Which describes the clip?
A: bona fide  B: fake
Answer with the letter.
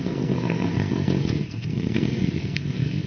B